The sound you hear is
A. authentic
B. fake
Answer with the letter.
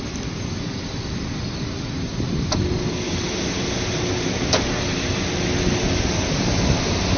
A